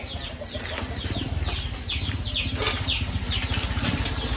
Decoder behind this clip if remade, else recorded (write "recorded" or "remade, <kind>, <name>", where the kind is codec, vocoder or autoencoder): recorded